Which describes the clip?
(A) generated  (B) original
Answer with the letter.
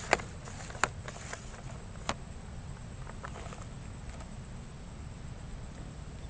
B